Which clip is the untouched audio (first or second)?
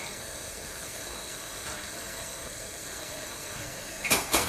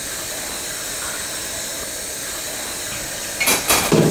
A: second